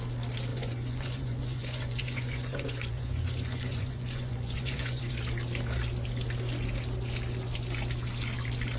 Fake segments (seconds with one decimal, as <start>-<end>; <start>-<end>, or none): 0.5-5.1